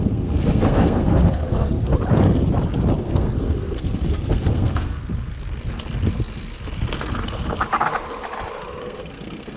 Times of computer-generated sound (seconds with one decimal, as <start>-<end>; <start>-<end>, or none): 0.0-1.9; 3.0-5.0; 8.8-9.6